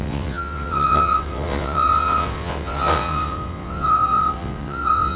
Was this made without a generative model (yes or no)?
no